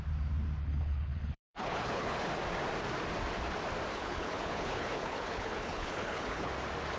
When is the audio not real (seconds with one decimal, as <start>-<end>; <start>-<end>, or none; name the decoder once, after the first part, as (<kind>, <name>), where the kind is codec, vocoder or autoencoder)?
0.6-2.3 (codec, HILCodec); 3.9-6.5